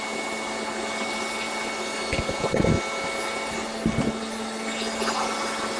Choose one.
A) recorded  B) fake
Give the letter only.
A